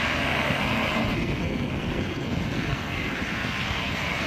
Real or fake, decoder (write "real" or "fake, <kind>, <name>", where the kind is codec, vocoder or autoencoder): fake, codec, SNAC